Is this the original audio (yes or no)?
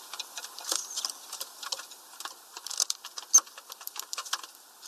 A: yes